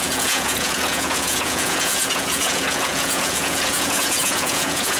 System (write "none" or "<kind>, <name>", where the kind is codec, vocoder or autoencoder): vocoder, Vocos